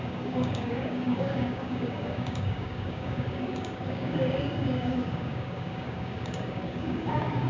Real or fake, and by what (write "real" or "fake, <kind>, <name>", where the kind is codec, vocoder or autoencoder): fake, codec, DAC